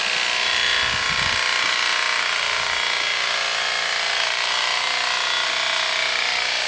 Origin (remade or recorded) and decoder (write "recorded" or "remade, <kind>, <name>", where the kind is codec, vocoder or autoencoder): recorded